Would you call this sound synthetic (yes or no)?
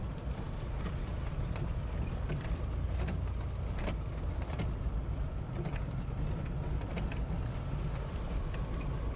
no